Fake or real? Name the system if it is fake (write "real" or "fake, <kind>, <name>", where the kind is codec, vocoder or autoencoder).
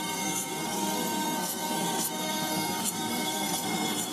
fake, codec, SNAC